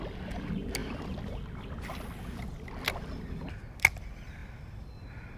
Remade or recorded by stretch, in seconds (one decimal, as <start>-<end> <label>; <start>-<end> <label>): 0.0-5.4 recorded